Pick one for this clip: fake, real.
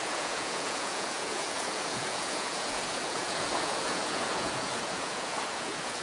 fake